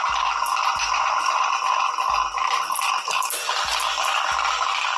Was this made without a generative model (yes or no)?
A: yes